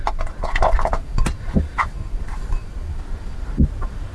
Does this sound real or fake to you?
real